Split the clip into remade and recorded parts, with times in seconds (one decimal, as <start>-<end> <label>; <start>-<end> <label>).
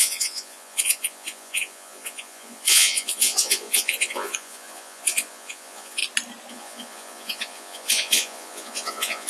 0.0-6.0 remade; 6.0-6.5 recorded; 6.5-9.3 remade